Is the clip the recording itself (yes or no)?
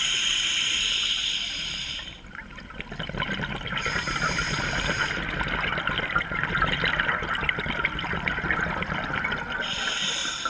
yes